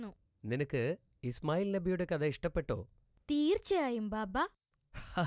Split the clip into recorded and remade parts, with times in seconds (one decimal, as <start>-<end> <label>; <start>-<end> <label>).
0.0-5.3 recorded